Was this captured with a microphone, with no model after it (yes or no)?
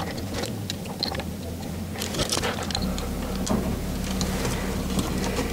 yes